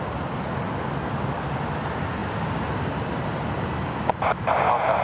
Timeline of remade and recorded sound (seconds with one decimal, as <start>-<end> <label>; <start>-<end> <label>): 0.0-5.0 recorded